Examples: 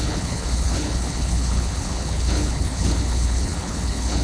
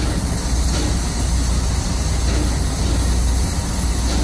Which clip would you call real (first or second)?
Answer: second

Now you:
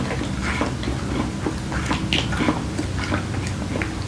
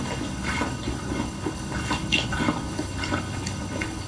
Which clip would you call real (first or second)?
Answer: first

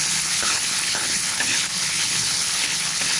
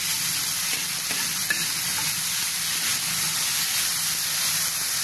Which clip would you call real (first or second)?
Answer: second